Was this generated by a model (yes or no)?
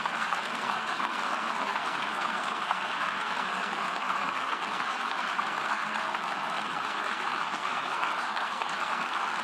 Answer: yes